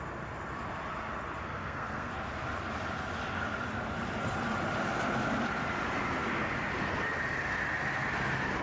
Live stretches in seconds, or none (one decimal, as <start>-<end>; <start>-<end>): 0.0-1.4; 2.1-8.6

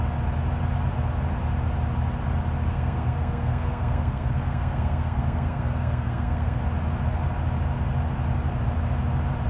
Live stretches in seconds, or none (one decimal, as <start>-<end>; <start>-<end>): 0.0-2.7; 6.6-9.5